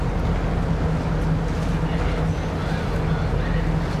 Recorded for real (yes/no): yes